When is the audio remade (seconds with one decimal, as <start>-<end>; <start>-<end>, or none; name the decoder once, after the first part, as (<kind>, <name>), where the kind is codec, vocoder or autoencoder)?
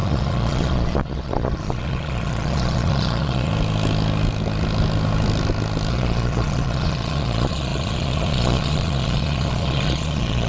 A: 0.0-3.5 (vocoder, Vocos); 5.9-10.5